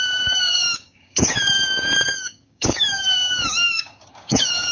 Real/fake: fake